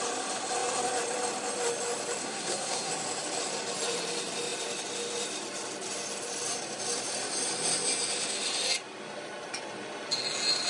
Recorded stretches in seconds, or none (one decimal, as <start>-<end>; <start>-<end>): 0.0-2.2; 2.9-10.7